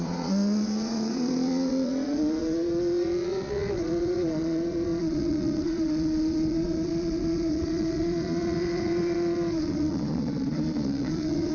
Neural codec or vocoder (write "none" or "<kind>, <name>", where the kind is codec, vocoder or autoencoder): vocoder, Vocos